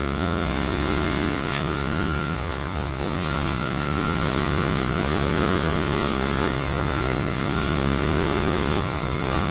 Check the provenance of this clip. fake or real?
fake